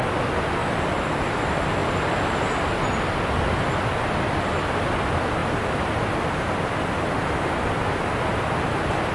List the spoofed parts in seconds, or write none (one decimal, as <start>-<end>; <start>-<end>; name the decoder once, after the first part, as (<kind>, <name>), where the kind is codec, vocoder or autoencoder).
none